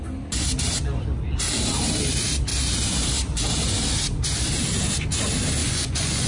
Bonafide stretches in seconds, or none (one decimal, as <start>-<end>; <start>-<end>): 0.0-5.6

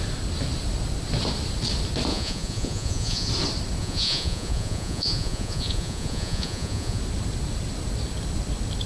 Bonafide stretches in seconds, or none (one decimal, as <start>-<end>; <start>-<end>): 0.0-2.1; 3.3-3.8; 7.0-8.9

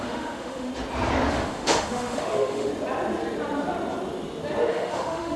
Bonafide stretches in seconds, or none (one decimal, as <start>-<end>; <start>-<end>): 0.7-1.3; 2.7-4.7

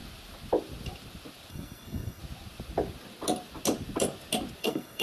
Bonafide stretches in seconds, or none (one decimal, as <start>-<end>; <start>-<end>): 0.0-1.5; 2.2-4.6

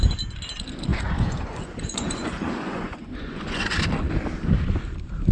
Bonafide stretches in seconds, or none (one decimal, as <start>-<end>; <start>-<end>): 0.0-0.9; 3.8-5.3

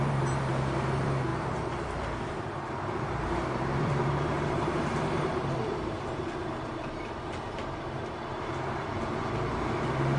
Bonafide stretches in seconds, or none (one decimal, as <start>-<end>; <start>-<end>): none